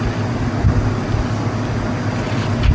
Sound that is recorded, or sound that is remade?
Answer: recorded